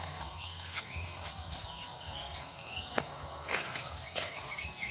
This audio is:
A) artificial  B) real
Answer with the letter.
A